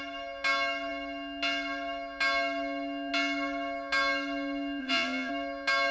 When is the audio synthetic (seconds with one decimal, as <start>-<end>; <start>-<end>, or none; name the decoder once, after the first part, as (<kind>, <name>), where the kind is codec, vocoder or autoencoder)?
4.8-5.3 (vocoder, Vocos)

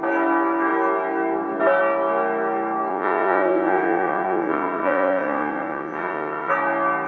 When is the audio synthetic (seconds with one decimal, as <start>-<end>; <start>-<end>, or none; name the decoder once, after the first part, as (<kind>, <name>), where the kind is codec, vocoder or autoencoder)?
2.9-6.5 (vocoder, Vocos)

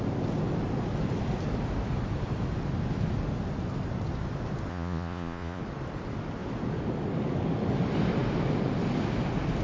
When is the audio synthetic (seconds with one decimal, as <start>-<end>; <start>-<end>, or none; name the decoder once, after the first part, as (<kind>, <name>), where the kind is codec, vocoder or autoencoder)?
4.7-5.6 (vocoder, Vocos)

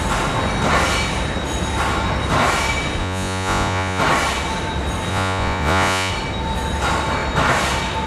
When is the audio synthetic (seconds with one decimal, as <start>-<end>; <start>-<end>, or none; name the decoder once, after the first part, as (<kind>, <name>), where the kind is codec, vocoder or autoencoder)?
3.0-4.0 (vocoder, Vocos); 5.1-6.1